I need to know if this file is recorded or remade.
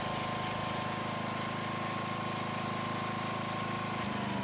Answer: recorded